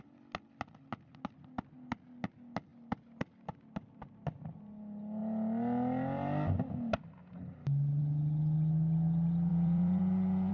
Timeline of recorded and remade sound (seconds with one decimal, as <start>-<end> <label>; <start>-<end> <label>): 0.0-9.5 recorded; 9.5-10.5 remade